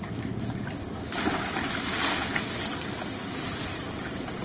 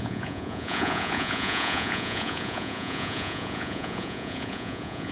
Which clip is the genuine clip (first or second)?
first